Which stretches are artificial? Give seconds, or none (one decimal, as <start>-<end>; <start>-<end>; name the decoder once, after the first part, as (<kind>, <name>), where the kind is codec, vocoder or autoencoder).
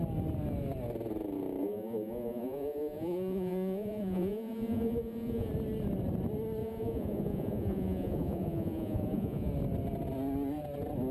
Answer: 1.6-5.5 (vocoder, Vocos); 6.6-9.5